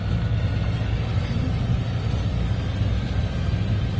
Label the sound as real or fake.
real